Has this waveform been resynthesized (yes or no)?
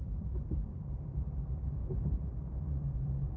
yes